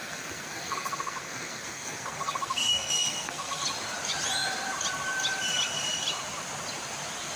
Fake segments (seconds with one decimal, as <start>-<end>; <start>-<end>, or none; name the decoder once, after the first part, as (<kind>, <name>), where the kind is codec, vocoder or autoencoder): 0.0-3.6 (codec, SNAC)